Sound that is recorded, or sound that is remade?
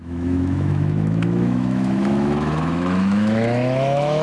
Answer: remade